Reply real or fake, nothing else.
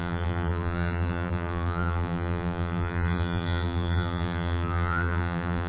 fake